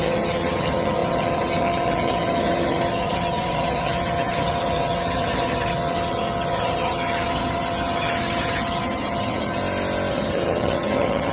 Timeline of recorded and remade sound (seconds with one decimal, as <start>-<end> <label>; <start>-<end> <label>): 0.0-9.6 remade; 9.6-10.1 recorded; 10.1-11.3 remade